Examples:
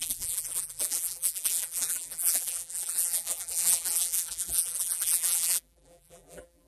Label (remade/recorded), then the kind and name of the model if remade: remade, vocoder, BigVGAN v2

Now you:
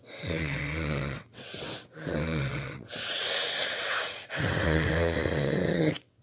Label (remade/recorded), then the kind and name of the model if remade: remade, vocoder, WaveNeXt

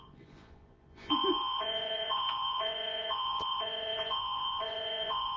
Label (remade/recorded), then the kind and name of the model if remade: remade, vocoder, Vocos